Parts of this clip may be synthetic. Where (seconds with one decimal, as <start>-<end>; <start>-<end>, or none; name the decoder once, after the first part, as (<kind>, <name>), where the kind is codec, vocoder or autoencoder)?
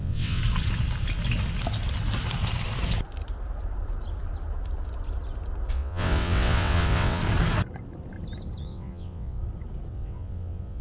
0.0-0.4 (vocoder, WaveNeXt); 5.7-7.2; 8.6-9.4; 9.9-10.8